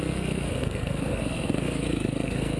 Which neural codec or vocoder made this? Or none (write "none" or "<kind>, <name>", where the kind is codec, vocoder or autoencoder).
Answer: codec, SNAC